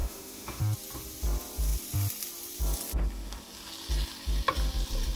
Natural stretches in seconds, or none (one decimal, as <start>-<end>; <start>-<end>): 0.6-5.2